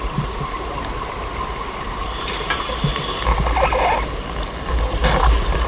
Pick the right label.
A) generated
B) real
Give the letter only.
B